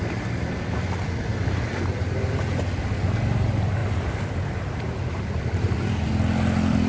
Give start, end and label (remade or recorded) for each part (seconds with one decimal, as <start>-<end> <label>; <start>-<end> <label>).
0.0-3.8 recorded; 3.8-6.1 remade; 6.1-6.9 recorded